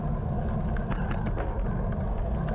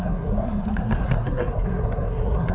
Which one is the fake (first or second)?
second